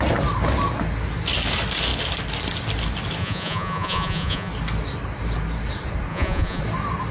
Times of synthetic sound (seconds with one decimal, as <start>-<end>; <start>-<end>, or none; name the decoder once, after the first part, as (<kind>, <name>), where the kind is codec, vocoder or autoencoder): 3.2-4.5 (vocoder, Vocos); 6.1-6.6